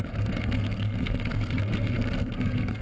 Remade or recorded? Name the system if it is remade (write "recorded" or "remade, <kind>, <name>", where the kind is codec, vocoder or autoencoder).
remade, codec, SNAC